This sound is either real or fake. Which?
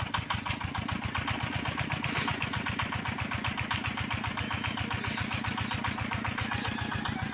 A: real